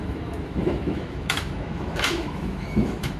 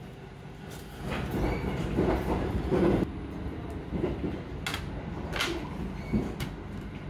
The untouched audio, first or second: second